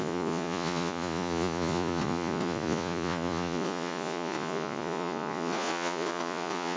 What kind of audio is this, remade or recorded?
remade